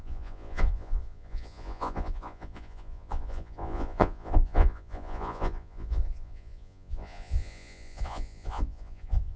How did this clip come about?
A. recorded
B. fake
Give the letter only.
B